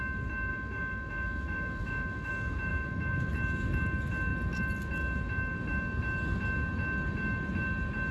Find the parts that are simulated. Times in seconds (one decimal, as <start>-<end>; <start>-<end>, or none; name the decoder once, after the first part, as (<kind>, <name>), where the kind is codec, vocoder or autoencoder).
0.5-2.3 (autoencoder, DAC-VAE); 2.7-3.3